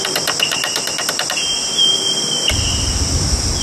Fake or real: fake